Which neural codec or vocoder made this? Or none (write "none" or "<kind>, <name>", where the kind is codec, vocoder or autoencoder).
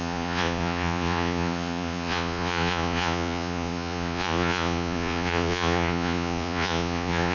vocoder, Vocos